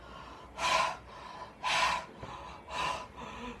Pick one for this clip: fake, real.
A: real